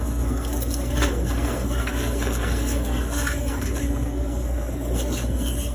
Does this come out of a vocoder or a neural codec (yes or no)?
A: yes